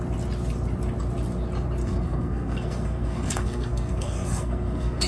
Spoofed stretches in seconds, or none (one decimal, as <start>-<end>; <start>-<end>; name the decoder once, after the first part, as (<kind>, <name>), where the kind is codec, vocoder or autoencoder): 1.8-5.1 (codec, SNAC)